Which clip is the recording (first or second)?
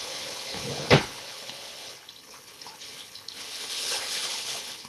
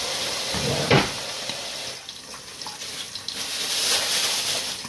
second